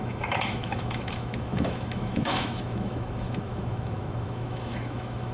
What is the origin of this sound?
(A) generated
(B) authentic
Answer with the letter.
A